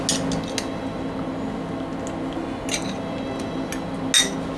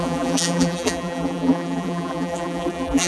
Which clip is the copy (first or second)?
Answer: second